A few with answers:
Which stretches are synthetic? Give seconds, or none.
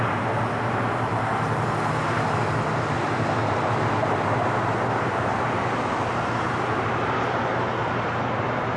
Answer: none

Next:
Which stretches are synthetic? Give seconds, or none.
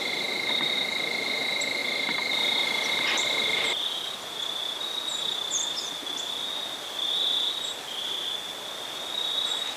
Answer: none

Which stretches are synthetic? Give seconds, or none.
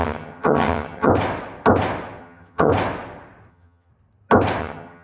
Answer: 0.0-1.1; 2.2-2.7; 3.5-3.9; 4.6-5.0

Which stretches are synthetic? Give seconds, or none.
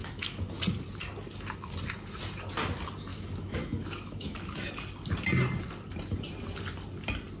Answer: 0.0-0.6; 3.1-4.7